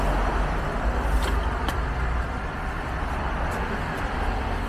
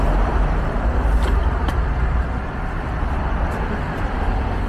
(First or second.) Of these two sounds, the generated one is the second